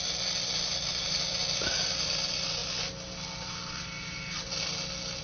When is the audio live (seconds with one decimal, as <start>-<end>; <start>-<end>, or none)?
0.0-5.2